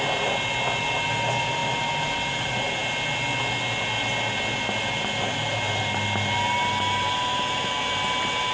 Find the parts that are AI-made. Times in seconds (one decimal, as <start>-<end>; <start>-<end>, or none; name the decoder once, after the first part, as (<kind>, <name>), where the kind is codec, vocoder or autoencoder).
none